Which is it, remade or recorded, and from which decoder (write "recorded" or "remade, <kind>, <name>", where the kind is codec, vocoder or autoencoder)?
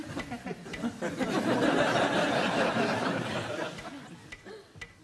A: recorded